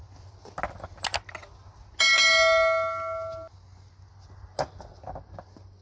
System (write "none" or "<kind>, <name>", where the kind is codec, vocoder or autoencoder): none